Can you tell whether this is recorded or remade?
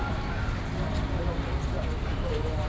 recorded